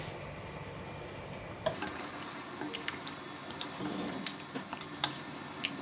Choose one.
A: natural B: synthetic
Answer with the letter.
A